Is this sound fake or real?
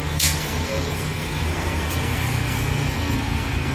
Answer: fake